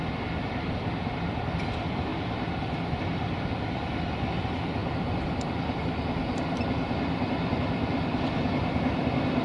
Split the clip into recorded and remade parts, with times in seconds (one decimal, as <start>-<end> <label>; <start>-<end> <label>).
0.0-4.8 recorded; 4.8-5.8 remade; 5.8-9.4 recorded